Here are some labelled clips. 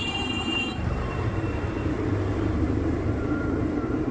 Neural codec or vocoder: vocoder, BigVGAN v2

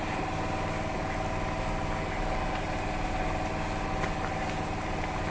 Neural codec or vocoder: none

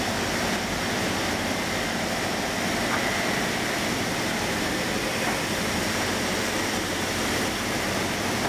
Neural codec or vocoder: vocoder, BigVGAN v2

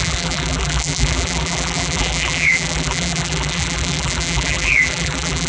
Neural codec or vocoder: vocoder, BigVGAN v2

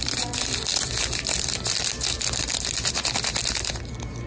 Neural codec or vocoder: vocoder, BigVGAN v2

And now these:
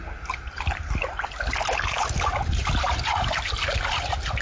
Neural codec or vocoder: none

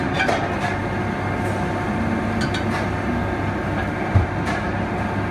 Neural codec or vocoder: none